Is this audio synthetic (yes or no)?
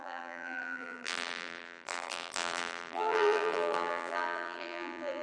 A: yes